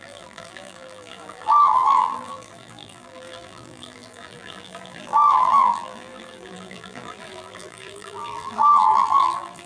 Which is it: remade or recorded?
remade